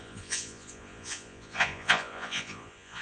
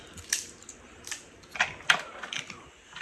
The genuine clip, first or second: second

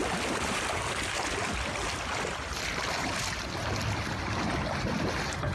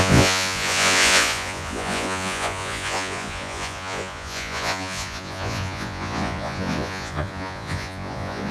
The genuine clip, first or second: first